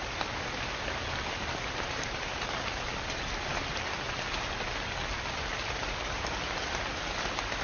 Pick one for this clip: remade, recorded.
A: recorded